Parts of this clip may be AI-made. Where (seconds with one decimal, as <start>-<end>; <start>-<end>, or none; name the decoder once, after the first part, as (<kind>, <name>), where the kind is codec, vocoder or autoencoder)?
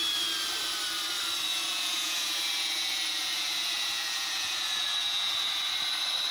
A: 1.5-5.3 (vocoder, Vocos)